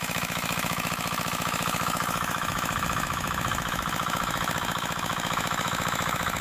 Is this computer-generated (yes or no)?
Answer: yes